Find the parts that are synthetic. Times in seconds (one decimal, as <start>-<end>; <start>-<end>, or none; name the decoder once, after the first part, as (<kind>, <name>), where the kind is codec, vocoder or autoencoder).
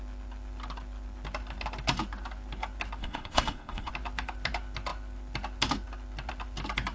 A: 3.0-3.9 (codec, HILCodec)